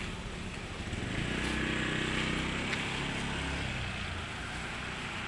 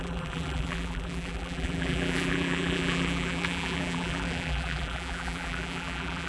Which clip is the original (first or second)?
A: first